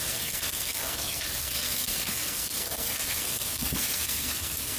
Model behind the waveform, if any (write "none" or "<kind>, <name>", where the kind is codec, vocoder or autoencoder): codec, SNAC